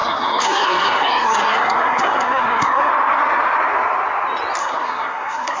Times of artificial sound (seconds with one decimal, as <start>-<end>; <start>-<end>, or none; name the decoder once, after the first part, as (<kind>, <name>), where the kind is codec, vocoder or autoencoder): 0.0-2.9 (codec, SNAC); 4.6-5.6